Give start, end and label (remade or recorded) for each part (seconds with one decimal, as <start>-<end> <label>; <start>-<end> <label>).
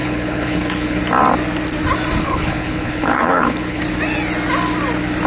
0.0-1.0 remade; 1.0-2.2 recorded; 2.2-3.8 remade; 3.8-5.3 recorded